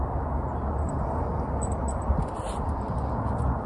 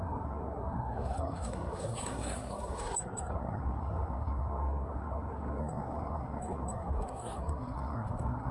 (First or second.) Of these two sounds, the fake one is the second